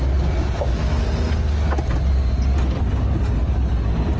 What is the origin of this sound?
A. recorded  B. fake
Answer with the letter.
A